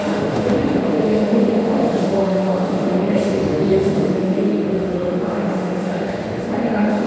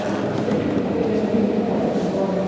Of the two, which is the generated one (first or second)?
first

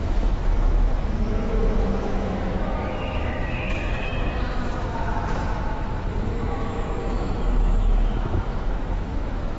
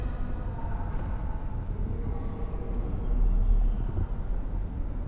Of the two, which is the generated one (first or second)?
first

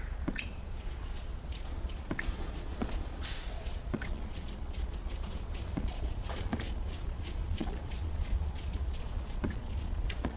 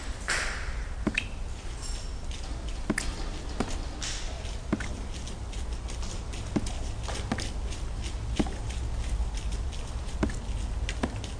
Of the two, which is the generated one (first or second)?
first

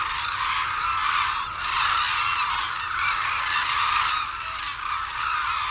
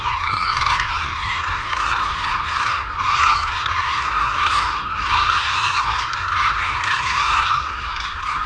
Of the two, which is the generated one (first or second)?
second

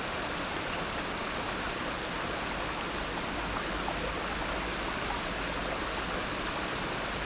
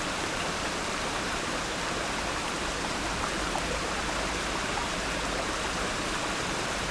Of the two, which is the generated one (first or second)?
second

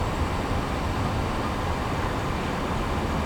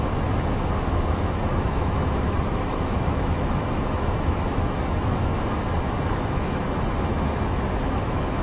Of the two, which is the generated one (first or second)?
second